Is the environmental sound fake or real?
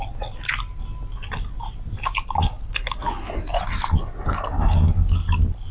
real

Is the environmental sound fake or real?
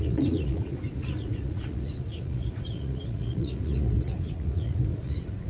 fake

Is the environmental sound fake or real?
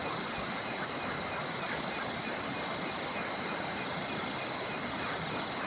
real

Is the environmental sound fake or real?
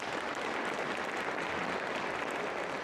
real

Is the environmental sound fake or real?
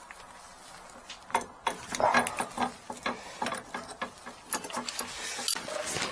real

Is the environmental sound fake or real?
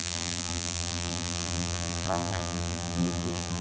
fake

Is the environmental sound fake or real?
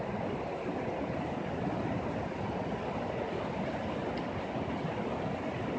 real